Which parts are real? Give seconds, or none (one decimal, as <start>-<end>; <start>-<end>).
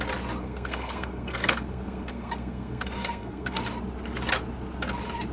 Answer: 0.0-0.4; 3.6-5.3